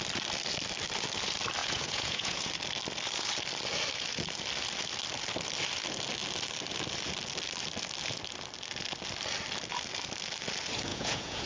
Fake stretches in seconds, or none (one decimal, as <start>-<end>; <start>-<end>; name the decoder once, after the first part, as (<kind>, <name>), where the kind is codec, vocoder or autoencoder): 1.6-2.5 (vocoder, Vocos); 10.9-11.5

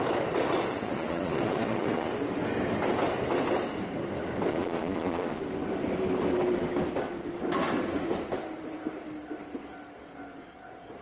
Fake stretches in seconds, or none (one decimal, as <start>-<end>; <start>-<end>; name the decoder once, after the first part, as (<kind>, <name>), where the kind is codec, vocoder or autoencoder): 0.7-2.1 (vocoder, Vocos); 4.5-5.4

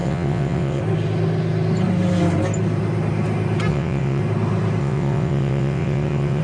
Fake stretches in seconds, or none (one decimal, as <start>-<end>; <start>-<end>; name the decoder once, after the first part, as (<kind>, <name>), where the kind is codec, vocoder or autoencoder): 0.0-0.8 (vocoder, WaveNeXt); 3.7-4.2; 4.8-6.4

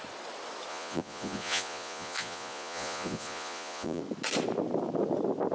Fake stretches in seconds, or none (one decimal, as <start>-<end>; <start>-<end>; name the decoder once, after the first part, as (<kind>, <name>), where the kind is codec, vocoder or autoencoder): 0.7-4.0 (vocoder, Vocos)

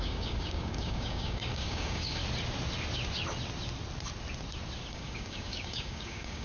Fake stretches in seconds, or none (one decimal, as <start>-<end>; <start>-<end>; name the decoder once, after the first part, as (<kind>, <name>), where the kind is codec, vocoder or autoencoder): 0.0-2.2 (codec, DAC); 4.9-6.4